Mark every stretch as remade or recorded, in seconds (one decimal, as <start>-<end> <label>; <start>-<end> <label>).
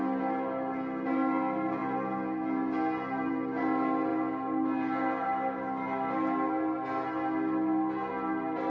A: 0.0-8.7 recorded